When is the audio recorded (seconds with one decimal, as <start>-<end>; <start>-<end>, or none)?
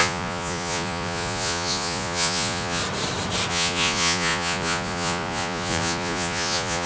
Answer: 2.8-3.5